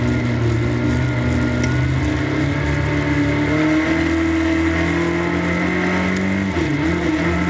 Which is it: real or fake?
real